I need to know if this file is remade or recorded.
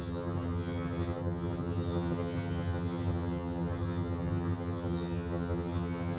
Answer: remade